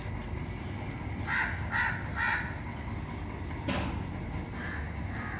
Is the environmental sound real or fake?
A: real